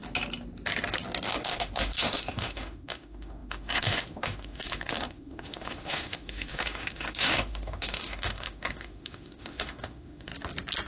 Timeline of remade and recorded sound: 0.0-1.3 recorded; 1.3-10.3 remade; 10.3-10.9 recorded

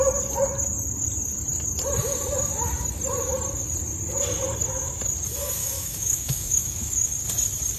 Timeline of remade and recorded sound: 0.0-5.6 recorded; 5.6-7.1 remade; 7.1-7.8 recorded

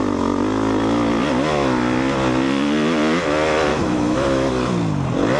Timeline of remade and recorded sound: 0.0-3.7 recorded; 3.7-4.5 remade; 4.5-5.4 recorded

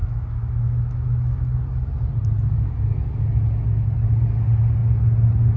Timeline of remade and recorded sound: 0.0-1.4 remade; 1.4-5.6 recorded